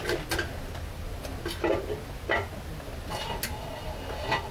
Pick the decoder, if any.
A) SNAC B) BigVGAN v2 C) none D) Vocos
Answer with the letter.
C